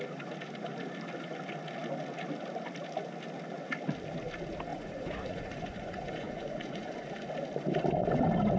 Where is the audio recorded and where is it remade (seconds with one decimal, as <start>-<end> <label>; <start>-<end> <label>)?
0.0-4.7 recorded; 4.7-7.1 remade; 7.1-8.6 recorded